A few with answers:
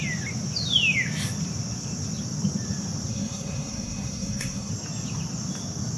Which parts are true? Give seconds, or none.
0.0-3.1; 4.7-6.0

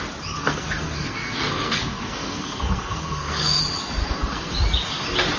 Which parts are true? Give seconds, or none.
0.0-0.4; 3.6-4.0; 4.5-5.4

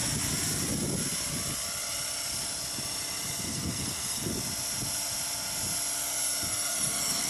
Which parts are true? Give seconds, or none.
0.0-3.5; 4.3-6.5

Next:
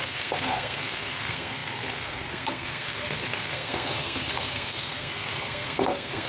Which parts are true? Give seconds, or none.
none

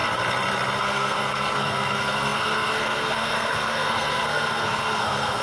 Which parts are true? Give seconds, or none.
0.0-0.8